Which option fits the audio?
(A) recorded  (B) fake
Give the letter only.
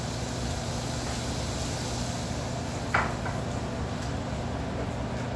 A